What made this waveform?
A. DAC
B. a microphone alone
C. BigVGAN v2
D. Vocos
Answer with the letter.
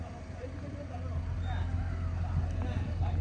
B